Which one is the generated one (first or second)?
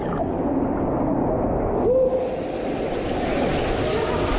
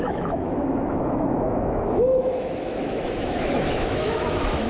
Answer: second